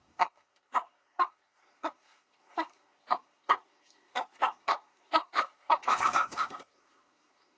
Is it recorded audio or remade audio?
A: remade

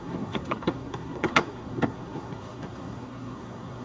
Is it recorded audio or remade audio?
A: remade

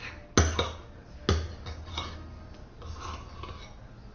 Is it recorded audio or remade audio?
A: recorded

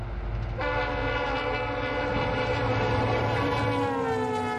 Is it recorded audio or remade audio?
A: recorded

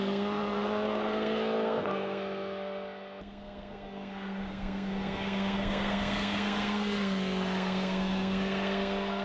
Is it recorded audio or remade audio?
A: remade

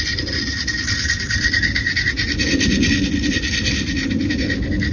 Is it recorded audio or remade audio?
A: recorded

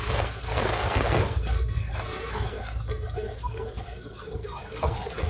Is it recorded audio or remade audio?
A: remade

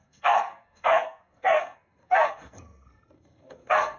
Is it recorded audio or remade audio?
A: remade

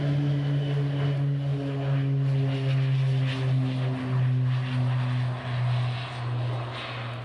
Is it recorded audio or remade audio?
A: recorded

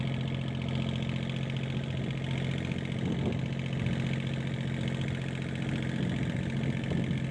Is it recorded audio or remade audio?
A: recorded